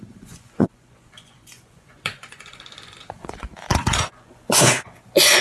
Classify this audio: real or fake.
fake